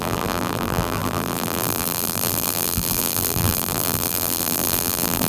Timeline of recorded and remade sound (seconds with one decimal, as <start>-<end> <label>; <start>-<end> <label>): 0.0-5.3 remade